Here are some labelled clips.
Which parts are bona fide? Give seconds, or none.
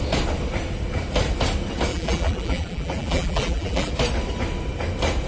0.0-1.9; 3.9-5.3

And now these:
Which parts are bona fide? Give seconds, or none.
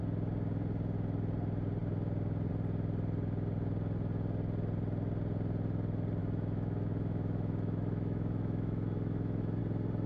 0.0-6.2; 9.6-10.1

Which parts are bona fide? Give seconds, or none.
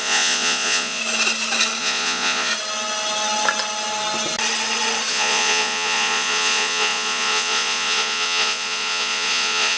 1.0-1.8; 2.5-5.1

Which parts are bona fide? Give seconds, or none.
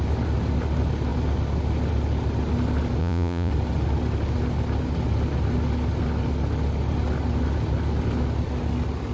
0.0-3.0; 3.5-9.1